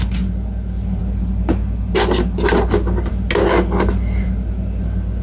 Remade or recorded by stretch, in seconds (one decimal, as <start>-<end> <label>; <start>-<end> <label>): 0.0-5.2 recorded